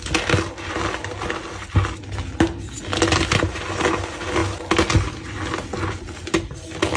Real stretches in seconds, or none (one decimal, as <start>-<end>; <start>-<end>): 0.0-7.0